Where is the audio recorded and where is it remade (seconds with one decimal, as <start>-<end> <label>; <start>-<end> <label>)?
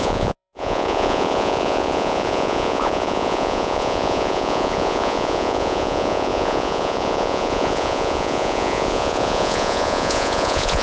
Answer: 0.0-10.8 remade